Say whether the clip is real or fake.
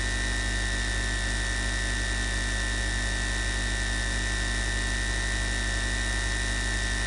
real